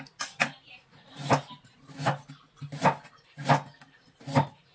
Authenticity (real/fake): real